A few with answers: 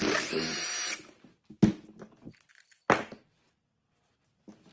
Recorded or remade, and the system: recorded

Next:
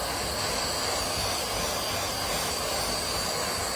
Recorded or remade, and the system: recorded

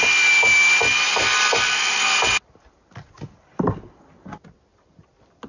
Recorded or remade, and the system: recorded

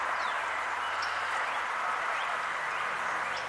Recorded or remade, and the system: recorded